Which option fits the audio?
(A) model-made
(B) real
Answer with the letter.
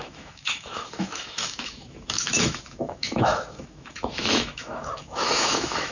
A